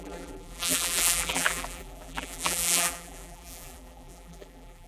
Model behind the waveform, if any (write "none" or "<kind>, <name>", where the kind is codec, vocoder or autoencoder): vocoder, BigVGAN v2